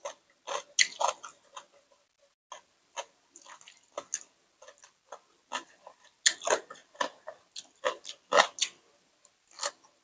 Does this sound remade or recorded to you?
recorded